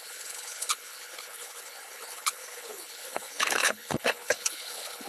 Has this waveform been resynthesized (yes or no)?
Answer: yes